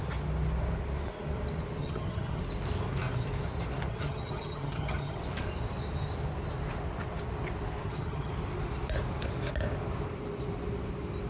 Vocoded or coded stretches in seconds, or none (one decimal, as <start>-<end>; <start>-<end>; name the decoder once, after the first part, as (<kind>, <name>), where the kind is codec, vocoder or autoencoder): 1.8-2.4 (vocoder, HiFi-GAN); 3.9-5.2; 7.8-8.3